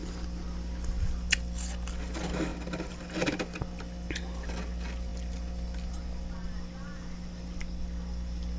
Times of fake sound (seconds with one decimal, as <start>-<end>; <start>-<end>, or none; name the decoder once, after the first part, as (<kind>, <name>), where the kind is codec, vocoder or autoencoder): none